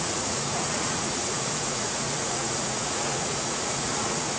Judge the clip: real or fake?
fake